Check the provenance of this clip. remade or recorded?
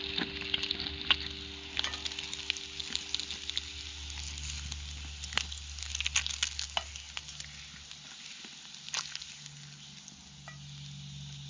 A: recorded